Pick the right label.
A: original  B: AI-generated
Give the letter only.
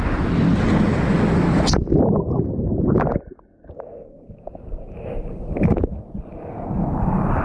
A